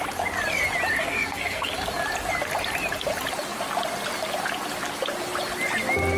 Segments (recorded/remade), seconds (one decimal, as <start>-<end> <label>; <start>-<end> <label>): 0.0-1.0 recorded; 1.0-1.7 remade; 1.7-6.2 recorded